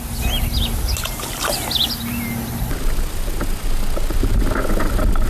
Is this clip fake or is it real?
real